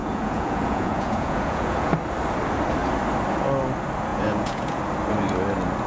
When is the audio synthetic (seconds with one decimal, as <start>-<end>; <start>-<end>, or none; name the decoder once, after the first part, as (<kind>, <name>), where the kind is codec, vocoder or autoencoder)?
0.0-1.9 (vocoder, Vocos); 4.1-4.8